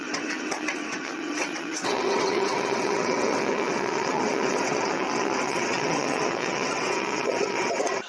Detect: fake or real fake